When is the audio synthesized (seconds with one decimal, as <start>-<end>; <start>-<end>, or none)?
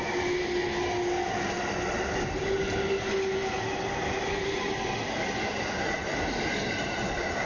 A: none